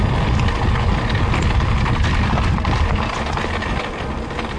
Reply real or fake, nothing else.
real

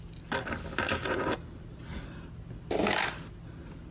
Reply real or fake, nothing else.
real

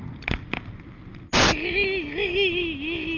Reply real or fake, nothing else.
real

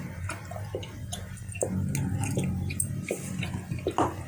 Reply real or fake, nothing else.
real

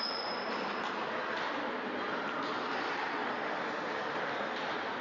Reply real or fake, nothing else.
real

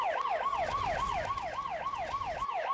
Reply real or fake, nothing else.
real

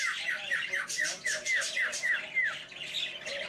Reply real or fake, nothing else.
fake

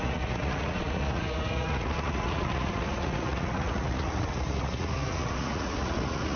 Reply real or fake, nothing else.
fake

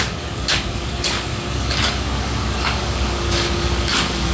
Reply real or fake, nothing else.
fake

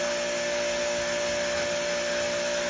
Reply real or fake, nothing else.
real